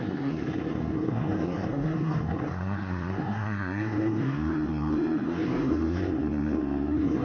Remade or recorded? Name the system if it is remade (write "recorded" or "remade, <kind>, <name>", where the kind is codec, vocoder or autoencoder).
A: remade, codec, SNAC